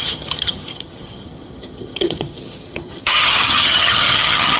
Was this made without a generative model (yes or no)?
no